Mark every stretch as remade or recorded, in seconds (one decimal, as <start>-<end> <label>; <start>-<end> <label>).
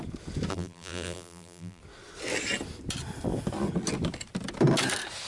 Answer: 0.0-0.5 recorded; 0.5-1.8 remade; 1.8-5.3 recorded